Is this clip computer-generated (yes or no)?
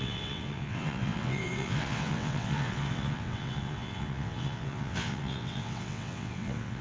yes